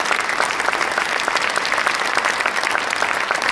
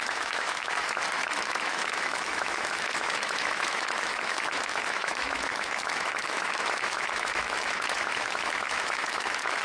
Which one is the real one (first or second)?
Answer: first